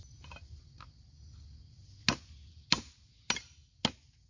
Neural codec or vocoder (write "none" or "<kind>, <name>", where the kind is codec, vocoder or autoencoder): none